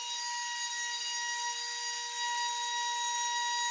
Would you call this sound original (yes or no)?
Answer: yes